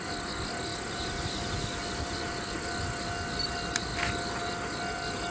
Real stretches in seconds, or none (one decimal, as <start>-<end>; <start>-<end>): 0.0-5.3